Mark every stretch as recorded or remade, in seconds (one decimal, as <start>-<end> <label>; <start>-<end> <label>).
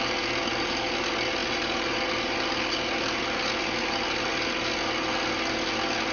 0.0-6.1 recorded